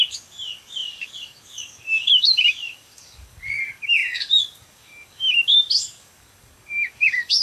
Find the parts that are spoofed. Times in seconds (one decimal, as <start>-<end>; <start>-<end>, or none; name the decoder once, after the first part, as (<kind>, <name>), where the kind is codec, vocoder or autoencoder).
0.0-7.4 (codec, DAC)

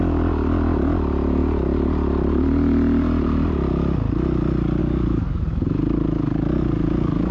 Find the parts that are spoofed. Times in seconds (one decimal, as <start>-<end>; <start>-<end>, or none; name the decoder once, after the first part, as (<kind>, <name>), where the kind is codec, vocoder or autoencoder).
4.8-5.4 (codec, DAC)

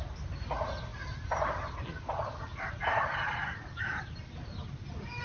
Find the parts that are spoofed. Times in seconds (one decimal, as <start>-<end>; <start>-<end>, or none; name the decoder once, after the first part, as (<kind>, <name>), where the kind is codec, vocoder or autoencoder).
none

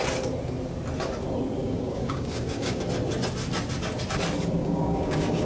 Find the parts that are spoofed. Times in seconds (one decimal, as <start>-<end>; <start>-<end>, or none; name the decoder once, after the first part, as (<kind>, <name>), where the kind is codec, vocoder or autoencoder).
1.6-2.8 (codec, DAC); 4.6-5.5

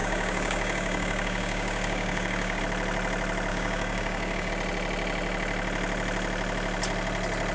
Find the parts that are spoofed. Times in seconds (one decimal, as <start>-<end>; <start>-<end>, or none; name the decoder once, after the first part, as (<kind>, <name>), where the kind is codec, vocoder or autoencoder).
0.0-2.6 (codec, DAC); 3.5-4.5